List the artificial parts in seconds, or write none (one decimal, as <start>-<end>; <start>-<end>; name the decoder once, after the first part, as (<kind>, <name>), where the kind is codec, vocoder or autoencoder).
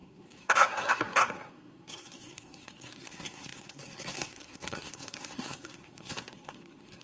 0.0-7.0 (codec, SNAC)